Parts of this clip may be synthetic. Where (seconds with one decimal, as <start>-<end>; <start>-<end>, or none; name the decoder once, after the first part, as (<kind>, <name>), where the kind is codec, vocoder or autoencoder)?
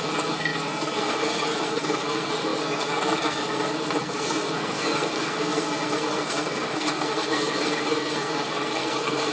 0.0-9.3 (codec, SNAC)